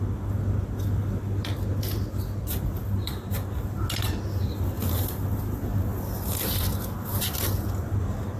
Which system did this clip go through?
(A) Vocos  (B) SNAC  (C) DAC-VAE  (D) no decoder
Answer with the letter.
D